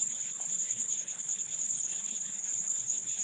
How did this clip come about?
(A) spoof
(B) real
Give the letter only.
A